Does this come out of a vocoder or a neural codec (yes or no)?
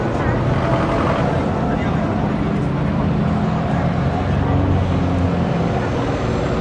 no